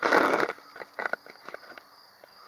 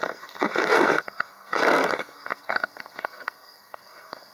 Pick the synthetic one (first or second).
second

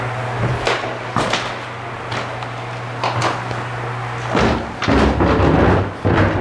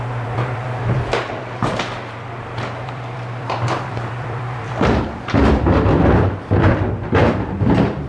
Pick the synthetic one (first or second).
second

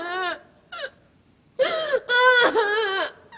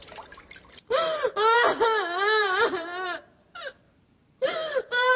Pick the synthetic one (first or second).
second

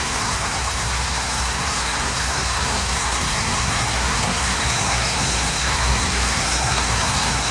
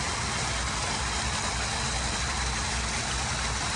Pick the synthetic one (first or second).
first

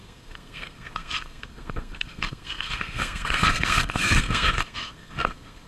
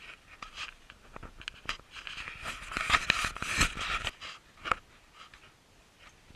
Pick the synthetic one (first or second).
first